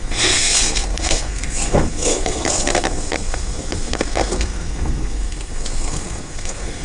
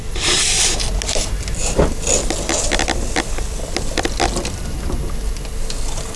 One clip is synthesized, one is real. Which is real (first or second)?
second